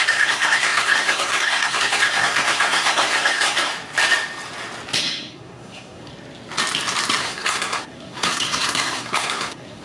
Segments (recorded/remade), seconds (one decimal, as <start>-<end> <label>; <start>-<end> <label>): 0.0-3.7 remade; 3.7-5.0 recorded; 5.0-6.1 remade; 6.1-7.2 recorded; 7.2-9.8 remade